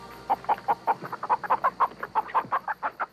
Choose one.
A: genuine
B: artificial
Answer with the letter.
A